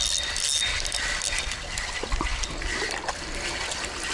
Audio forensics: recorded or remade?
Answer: recorded